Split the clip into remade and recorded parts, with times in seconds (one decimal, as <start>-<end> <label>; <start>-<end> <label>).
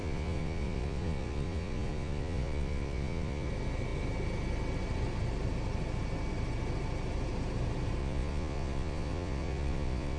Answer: 0.0-3.5 remade; 3.5-8.0 recorded; 8.0-10.2 remade